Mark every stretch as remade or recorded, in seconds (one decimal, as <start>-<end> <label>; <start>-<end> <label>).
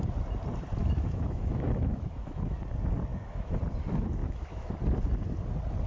0.0-0.8 recorded; 0.8-2.6 remade; 2.6-3.1 recorded; 3.1-3.6 remade; 3.6-4.2 recorded; 4.2-4.7 remade; 4.7-5.9 recorded